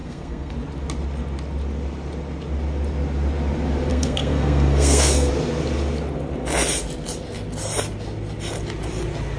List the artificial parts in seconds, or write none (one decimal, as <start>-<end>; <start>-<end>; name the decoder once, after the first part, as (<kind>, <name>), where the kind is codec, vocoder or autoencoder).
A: 0.0-0.5 (codec, SNAC); 3.9-5.3